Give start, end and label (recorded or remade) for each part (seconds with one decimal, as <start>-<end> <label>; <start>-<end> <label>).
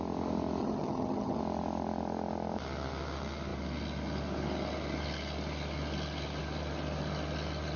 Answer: 0.0-0.6 recorded; 0.6-1.4 remade; 1.4-7.8 recorded